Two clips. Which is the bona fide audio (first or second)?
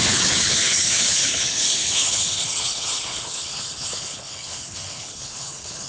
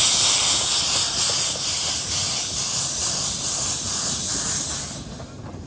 second